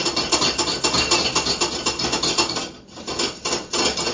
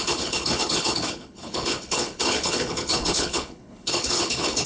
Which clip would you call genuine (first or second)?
first